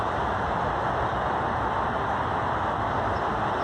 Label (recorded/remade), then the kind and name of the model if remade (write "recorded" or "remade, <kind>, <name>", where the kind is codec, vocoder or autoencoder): recorded